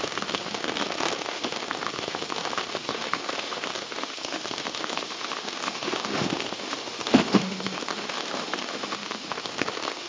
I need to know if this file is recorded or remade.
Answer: remade